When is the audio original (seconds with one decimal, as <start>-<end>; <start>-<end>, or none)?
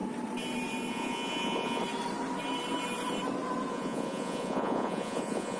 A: 0.0-0.9; 1.8-3.7